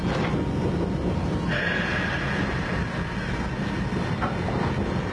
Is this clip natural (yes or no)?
yes